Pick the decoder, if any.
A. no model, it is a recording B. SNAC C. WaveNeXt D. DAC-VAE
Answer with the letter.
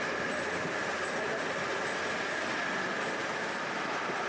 A